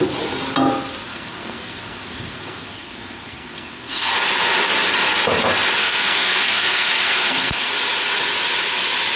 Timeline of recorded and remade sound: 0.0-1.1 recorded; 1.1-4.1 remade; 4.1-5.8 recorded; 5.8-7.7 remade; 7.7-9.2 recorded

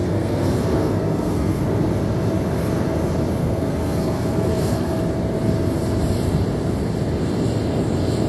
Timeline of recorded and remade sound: 0.0-1.6 remade; 1.6-3.4 recorded; 3.4-5.0 remade; 5.0-8.3 recorded

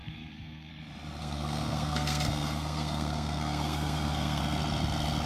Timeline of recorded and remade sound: 0.0-0.7 remade; 0.7-1.2 recorded; 1.2-4.4 remade; 4.4-5.3 recorded

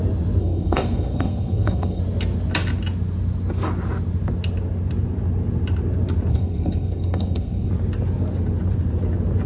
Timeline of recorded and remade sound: 0.0-0.4 recorded; 0.4-2.0 remade; 2.0-6.3 recorded; 6.3-7.7 remade; 7.7-9.5 recorded

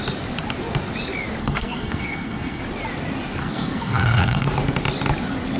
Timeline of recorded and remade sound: 0.0-1.4 recorded; 1.4-2.6 remade; 2.6-3.4 recorded; 3.4-4.5 remade; 4.5-5.6 recorded

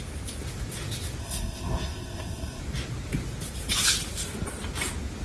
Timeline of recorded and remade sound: 0.0-1.2 recorded; 1.2-2.6 remade; 2.6-5.2 recorded